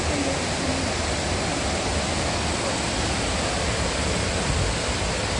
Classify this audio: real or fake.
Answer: real